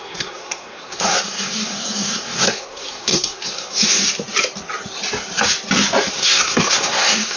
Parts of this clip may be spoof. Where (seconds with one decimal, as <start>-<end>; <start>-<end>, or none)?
0.0-4.0; 6.1-7.4